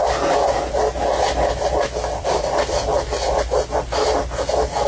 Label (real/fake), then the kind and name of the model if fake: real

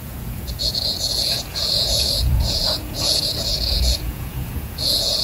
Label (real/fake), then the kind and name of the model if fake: fake, vocoder, Vocos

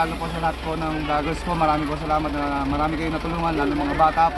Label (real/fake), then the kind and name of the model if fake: real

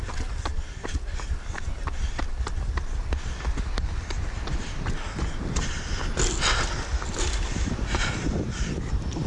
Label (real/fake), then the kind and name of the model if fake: real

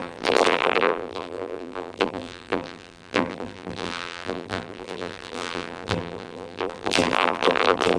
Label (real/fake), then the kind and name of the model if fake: fake, vocoder, BigVGAN v2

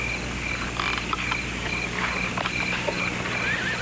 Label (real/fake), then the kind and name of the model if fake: real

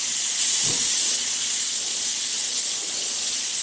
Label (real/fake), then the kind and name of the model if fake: fake, vocoder, Vocos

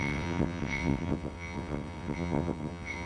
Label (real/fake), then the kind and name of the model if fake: fake, vocoder, WaveNeXt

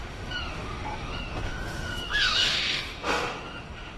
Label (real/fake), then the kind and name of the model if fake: fake, autoencoder, DAC-VAE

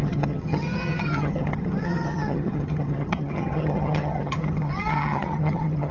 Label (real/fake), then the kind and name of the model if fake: fake, vocoder, HiFi-GAN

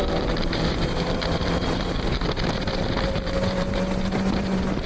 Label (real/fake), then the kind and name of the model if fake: fake, vocoder, BigVGAN v2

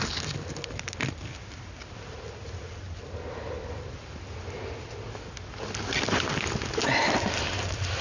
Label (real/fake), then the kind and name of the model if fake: real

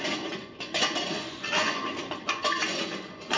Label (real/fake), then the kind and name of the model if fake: fake, vocoder, Vocos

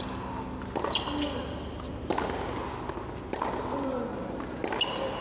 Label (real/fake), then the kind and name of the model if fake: real